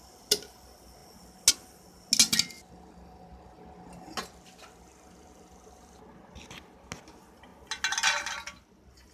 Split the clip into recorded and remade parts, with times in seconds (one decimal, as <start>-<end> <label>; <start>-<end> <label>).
0.0-9.1 recorded